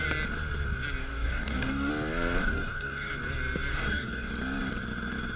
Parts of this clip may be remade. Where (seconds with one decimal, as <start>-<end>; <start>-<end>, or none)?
1.0-1.9; 2.4-3.1; 3.7-4.3

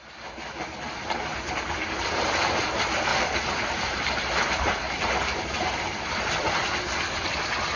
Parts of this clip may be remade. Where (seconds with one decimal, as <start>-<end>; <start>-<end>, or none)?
1.3-2.7; 3.1-6.8

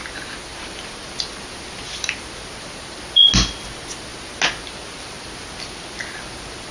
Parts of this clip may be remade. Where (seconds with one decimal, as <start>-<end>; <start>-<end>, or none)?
none

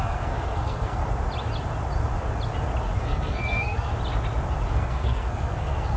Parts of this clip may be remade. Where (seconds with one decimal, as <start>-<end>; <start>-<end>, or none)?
0.0-1.0; 3.0-3.9; 4.7-6.0

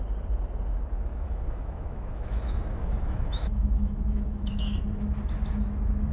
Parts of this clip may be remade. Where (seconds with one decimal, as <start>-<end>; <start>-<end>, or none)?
1.1-4.8

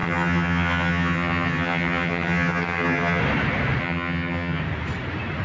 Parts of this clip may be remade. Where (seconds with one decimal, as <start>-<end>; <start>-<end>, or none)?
0.0-3.2; 3.8-4.6

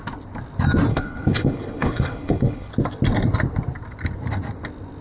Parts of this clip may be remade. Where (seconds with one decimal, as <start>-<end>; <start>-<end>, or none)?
0.9-2.7

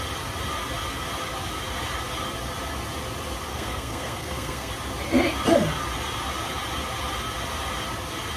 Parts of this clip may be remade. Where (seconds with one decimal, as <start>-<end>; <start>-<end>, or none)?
3.5-4.7